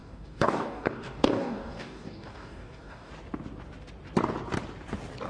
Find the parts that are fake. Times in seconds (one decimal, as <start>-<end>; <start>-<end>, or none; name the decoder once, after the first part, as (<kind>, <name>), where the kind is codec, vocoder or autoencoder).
0.0-3.1 (codec, DAC)